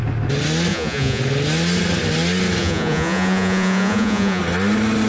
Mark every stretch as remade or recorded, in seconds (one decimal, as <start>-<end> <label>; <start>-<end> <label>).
0.0-0.7 recorded; 0.7-1.2 remade; 1.2-2.6 recorded; 2.6-4.4 remade; 4.4-5.1 recorded